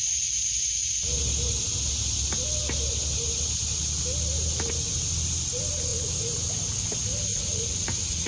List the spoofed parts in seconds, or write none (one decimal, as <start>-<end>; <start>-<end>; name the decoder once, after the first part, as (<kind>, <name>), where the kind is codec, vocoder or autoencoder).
7.3-8.3 (vocoder, Vocos)

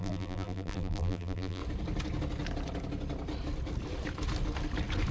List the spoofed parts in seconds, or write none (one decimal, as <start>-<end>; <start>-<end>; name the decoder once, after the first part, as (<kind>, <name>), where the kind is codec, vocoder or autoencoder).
0.0-1.6 (vocoder, BigVGAN v2)

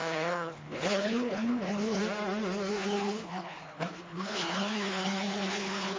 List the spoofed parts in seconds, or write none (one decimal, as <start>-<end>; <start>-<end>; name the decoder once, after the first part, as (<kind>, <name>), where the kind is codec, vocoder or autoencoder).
0.0-2.0 (codec, HILCodec); 2.7-6.0

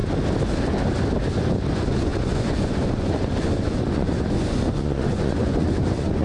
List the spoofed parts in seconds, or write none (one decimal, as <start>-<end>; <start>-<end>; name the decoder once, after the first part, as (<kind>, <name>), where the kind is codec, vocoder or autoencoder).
1.7-6.2 (vocoder, Vocos)